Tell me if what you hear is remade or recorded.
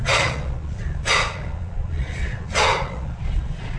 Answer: remade